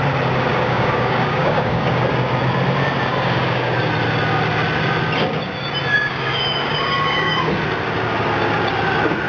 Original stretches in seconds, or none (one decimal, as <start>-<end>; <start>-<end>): 0.0-0.5; 2.0-3.1; 3.8-5.9; 7.5-9.3